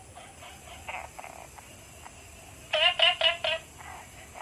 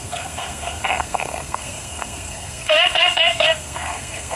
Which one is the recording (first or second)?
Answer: first